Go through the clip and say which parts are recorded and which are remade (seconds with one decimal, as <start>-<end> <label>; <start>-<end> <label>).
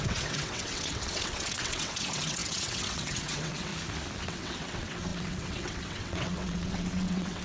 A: 0.0-3.7 remade; 3.7-4.2 recorded; 4.2-7.4 remade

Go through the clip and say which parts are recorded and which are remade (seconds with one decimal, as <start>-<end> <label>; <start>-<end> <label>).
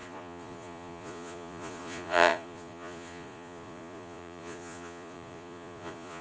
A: 0.0-6.2 remade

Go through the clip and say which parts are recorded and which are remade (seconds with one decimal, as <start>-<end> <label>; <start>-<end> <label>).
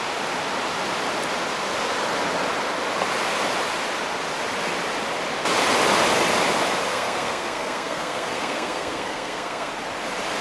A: 0.0-6.9 recorded; 6.9-9.7 remade; 9.7-10.4 recorded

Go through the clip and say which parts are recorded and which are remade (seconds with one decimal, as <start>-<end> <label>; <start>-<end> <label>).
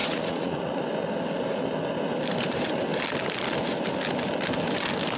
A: 0.0-0.8 remade; 0.8-5.2 recorded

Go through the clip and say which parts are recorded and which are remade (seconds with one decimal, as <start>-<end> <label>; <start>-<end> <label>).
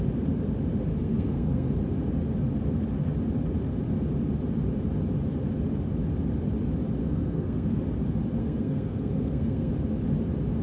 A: 0.0-0.9 recorded; 0.9-1.7 remade; 1.7-7.0 recorded; 7.0-7.8 remade; 7.8-8.4 recorded; 8.4-9.7 remade; 9.7-10.6 recorded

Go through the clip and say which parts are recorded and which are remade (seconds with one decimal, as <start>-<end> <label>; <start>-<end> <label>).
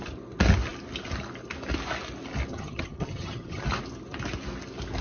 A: 0.0-2.5 recorded; 2.5-3.6 remade; 3.6-5.0 recorded